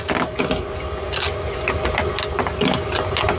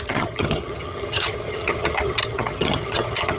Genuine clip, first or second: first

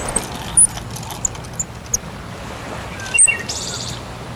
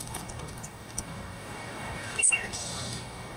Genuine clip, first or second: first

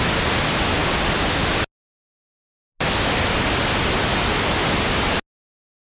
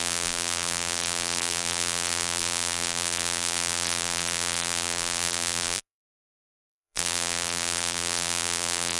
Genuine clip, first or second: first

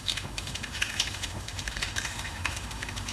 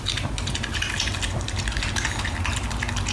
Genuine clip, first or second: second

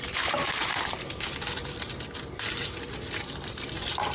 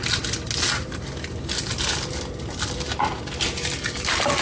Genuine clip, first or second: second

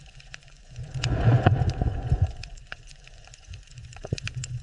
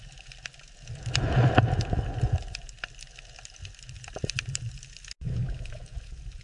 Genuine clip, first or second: second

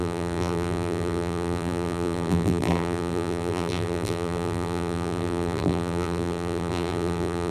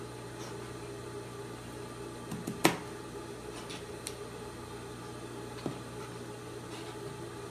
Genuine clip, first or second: second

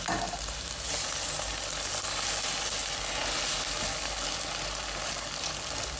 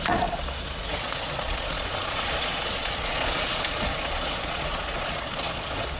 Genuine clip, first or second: first